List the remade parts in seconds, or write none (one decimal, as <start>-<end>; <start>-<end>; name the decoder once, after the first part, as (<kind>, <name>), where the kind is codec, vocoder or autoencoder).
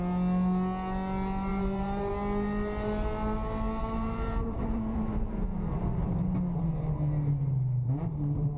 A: 1.5-2.1 (vocoder, BigVGAN v2); 3.8-6.1